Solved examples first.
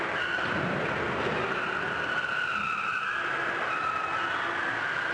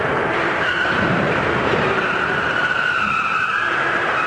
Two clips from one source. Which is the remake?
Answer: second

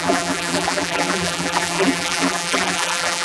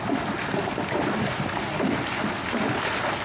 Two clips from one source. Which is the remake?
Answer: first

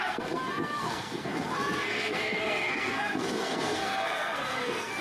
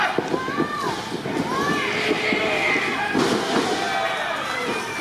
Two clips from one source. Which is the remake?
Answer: first